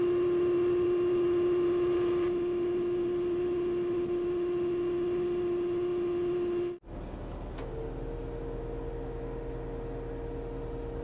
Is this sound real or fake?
real